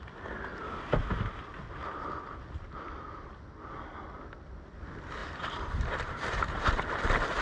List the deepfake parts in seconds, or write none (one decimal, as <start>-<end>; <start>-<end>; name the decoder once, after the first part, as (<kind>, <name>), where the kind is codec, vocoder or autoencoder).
5.2-6.7 (vocoder, BigVGAN v2)